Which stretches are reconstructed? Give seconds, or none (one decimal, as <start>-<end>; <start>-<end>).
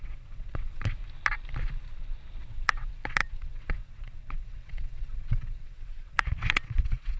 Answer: 0.0-1.0; 2.4-7.2